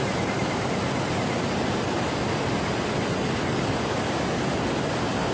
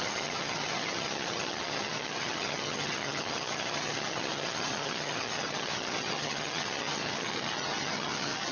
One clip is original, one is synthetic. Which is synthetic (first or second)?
second